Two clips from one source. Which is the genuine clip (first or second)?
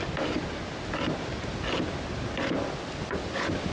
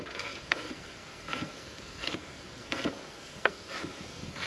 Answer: first